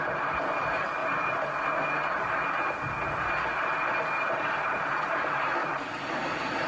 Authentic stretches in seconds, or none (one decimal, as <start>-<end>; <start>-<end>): 1.0-5.0